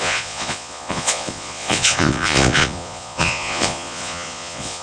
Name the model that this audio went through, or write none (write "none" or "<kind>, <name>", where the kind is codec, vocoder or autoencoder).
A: vocoder, Vocos